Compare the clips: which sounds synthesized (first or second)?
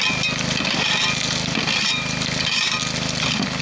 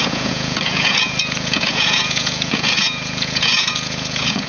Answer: second